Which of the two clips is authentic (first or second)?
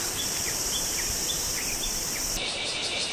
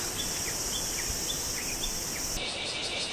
second